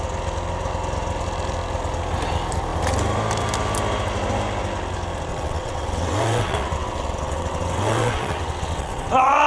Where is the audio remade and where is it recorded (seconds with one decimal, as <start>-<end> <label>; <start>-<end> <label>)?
0.0-5.3 recorded; 5.3-9.5 remade